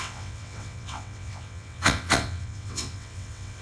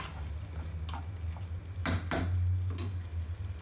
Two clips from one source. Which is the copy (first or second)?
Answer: first